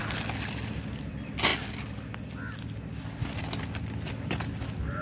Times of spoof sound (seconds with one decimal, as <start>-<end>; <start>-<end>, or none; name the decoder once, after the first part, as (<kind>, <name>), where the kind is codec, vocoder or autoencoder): none